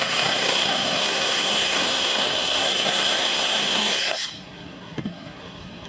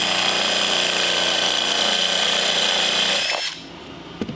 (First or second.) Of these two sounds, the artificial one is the first